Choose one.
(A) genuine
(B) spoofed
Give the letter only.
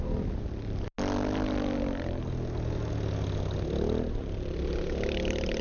A